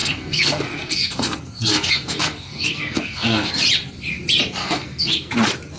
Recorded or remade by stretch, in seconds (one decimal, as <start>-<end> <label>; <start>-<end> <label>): 0.0-3.5 remade; 3.5-4.6 recorded; 4.6-5.3 remade; 5.3-5.8 recorded